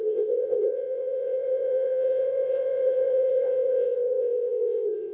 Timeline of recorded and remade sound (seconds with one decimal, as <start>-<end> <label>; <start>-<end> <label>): 0.0-5.1 remade